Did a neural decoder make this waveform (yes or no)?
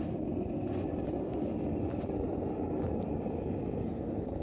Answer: no